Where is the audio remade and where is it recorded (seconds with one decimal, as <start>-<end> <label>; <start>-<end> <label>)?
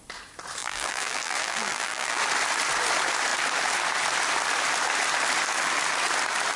0.0-0.6 recorded; 0.6-2.2 remade; 2.2-6.6 recorded